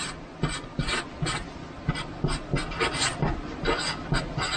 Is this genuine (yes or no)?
yes